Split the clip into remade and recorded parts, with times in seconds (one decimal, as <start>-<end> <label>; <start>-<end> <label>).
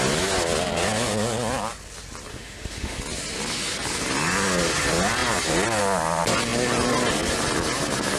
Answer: 0.0-2.3 recorded; 2.3-3.0 remade; 3.0-8.2 recorded